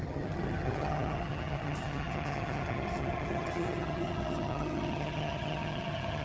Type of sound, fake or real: fake